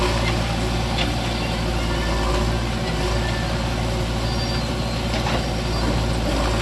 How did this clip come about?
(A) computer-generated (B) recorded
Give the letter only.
B